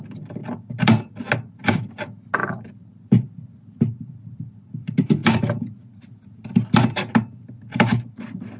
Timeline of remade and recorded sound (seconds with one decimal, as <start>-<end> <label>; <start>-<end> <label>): 0.0-8.6 recorded